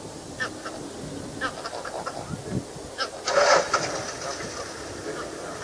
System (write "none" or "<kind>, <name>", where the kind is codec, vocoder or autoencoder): none